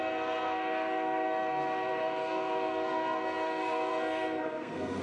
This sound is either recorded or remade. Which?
remade